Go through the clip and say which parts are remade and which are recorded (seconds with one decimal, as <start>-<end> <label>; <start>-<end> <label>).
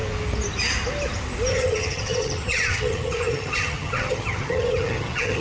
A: 0.0-1.5 recorded; 1.5-5.4 remade